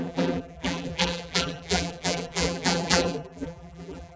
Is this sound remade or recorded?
remade